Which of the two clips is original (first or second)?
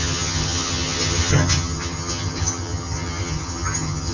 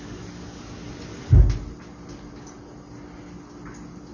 second